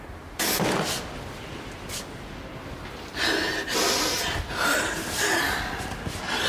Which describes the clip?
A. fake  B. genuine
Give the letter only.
B